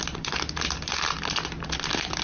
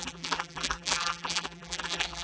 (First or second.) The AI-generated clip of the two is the second